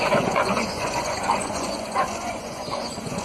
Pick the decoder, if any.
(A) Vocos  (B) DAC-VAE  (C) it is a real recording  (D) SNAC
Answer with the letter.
A